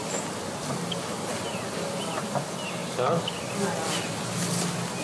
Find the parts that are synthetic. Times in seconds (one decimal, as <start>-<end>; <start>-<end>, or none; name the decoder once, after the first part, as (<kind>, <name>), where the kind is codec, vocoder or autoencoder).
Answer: none

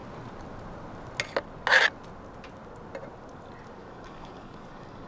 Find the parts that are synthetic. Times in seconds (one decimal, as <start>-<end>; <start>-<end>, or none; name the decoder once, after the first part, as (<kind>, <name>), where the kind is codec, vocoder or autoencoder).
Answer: 3.8-5.1 (codec, DAC)

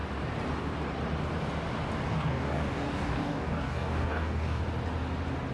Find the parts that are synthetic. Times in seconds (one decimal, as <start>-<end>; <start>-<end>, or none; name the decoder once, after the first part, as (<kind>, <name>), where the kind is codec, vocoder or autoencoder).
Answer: 2.1-4.6 (codec, DAC)

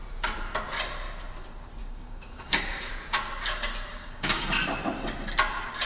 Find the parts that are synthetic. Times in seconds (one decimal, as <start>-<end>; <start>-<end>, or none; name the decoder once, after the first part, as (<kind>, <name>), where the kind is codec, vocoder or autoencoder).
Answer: 1.8-2.9 (codec, DAC); 3.9-4.5